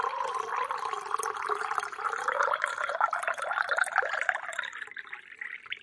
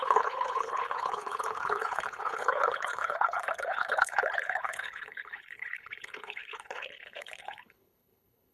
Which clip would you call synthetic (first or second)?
second